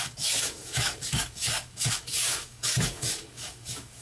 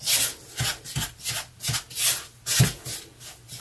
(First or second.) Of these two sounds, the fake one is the first